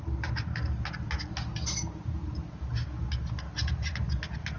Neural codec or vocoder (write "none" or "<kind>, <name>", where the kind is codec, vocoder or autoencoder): none